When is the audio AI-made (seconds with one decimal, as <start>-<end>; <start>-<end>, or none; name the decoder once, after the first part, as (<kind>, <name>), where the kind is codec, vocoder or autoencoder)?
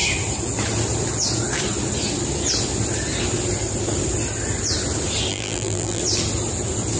5.3-6.0 (vocoder, BigVGAN v2)